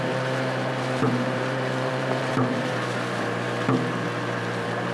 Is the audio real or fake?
fake